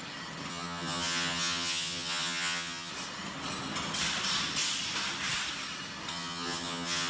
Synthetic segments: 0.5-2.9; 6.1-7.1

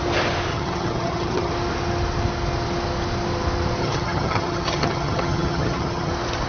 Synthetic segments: 0.5-1.5; 3.8-6.1

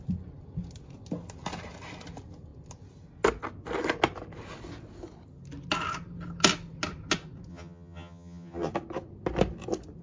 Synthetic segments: 7.5-8.7

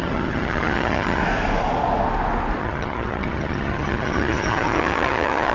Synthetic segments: 0.0-1.2; 2.6-5.5

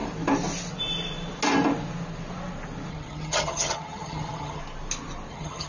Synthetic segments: 2.9-4.6; 5.3-5.7

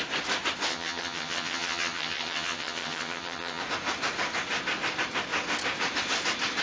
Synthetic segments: 0.7-3.6

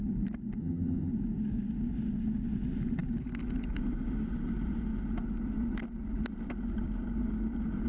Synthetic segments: 0.6-1.1

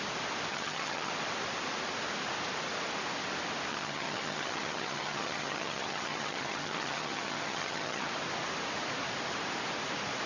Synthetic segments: 0.5-1.1; 3.7-8.1